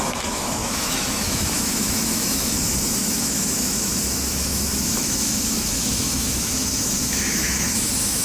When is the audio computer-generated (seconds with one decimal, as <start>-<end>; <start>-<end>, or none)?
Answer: 0.0-8.2